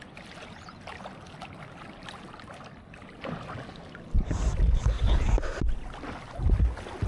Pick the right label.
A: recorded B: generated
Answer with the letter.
A